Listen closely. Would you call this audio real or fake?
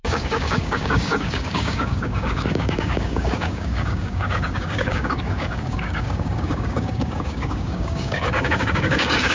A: fake